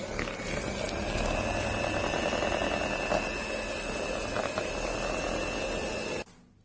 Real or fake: real